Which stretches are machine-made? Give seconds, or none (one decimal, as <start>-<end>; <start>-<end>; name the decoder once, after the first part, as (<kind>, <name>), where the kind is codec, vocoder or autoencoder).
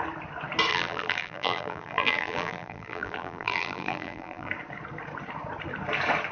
0.7-4.5 (vocoder, BigVGAN v2)